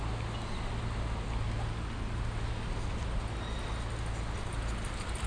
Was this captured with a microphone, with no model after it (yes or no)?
yes